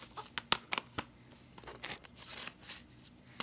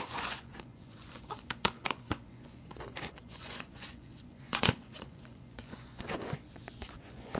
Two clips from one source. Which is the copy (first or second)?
second